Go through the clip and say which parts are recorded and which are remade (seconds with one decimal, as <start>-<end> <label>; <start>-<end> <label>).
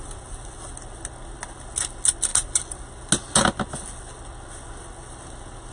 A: 0.0-5.7 recorded